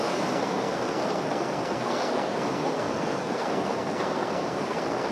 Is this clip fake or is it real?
fake